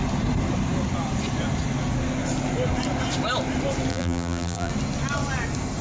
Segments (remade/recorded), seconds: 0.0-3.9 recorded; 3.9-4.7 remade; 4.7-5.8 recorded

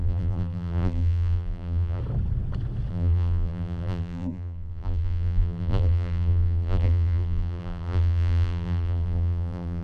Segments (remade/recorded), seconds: 0.0-2.0 remade; 2.0-2.9 recorded; 2.9-9.8 remade

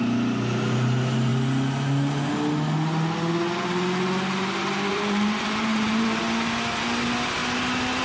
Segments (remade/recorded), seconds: 0.0-4.9 recorded; 4.9-6.2 remade; 6.2-8.0 recorded

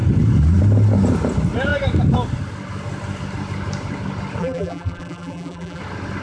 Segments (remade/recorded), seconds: 0.0-4.4 recorded; 4.4-5.8 remade; 5.8-6.2 recorded